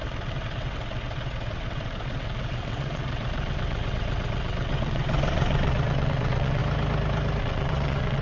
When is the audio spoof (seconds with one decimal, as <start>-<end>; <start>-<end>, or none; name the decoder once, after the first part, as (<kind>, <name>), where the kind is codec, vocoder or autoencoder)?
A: 0.0-6.6 (vocoder, WaveNeXt); 7.4-8.2